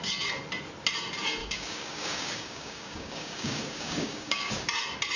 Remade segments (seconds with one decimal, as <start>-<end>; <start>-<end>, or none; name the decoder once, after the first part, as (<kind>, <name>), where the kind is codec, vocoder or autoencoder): 1.4-4.5 (codec, DAC)